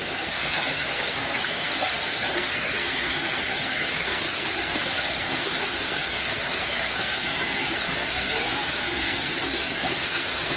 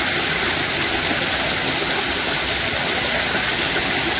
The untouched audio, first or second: second